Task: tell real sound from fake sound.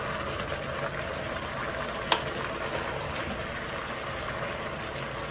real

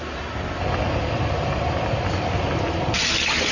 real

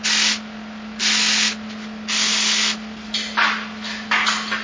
real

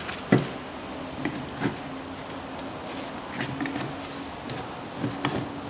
real